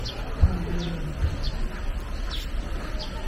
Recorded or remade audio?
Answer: recorded